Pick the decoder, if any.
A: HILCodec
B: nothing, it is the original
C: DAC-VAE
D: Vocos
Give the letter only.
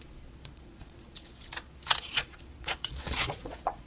D